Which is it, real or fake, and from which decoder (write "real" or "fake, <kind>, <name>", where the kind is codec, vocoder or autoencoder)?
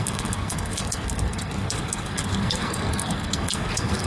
fake, codec, SNAC